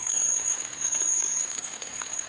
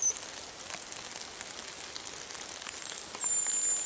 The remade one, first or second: first